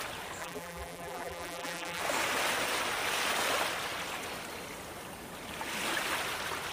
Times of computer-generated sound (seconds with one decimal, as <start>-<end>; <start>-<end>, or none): 0.4-2.0